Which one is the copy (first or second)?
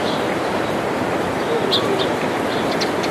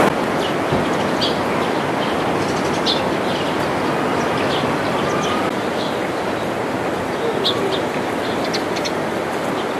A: first